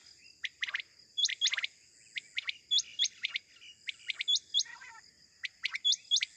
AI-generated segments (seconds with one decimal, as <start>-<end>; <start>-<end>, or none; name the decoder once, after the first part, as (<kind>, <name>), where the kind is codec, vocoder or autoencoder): 0.0-1.3 (vocoder, BigVGAN v2); 2.9-3.4